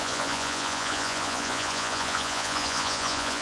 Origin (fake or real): fake